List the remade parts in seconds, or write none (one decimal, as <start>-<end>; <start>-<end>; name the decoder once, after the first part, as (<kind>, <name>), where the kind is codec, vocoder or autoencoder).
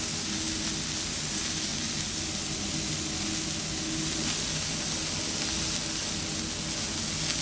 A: none